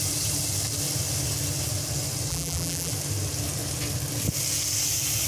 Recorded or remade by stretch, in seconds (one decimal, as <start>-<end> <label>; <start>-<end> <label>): 0.0-2.3 recorded; 2.3-2.9 remade; 2.9-5.3 recorded